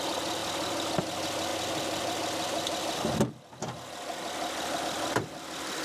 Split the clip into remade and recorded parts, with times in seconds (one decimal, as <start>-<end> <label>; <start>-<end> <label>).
0.0-5.8 recorded